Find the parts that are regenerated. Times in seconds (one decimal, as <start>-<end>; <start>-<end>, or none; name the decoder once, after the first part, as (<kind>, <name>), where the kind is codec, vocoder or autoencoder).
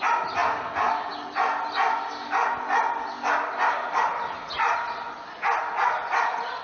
none